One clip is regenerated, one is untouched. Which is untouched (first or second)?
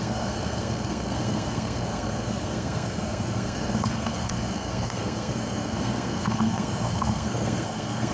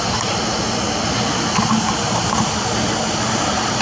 second